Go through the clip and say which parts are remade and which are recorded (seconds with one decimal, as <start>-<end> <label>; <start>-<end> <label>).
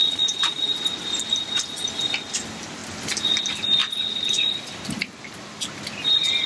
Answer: 0.0-0.6 remade; 0.6-6.5 recorded